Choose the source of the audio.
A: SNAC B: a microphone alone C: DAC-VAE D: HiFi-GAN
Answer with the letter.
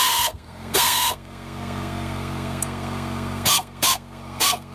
A